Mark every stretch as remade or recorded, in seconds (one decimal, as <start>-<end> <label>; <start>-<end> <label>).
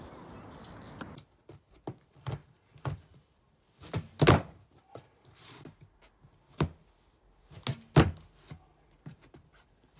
0.0-10.0 recorded